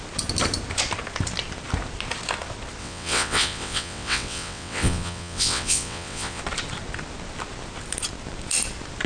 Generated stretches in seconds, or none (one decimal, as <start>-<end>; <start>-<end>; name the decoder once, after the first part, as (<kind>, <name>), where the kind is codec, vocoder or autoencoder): 2.8-6.4 (vocoder, WaveNeXt)